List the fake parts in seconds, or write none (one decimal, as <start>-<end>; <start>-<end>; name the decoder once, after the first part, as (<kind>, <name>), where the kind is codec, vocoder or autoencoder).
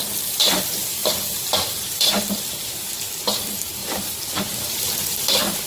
1.0-3.1 (vocoder, BigVGAN v2); 3.8-4.9